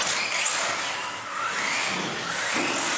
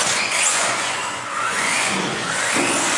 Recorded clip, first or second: first